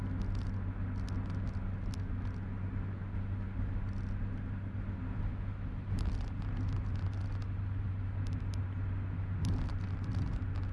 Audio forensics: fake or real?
real